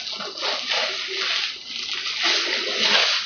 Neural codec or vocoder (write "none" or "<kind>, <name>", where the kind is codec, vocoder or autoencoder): none